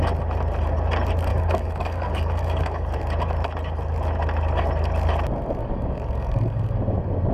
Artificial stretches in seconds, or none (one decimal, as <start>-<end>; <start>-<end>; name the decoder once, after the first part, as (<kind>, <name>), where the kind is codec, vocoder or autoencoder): 1.3-3.0 (codec, DAC); 5.6-6.8